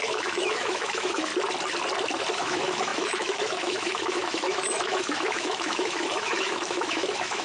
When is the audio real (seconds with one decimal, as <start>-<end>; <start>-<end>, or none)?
1.3-2.3